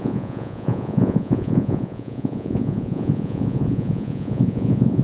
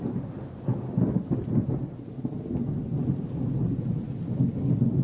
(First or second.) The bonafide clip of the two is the second